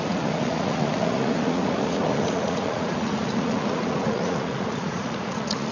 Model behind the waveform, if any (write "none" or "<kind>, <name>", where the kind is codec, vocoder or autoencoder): vocoder, Vocos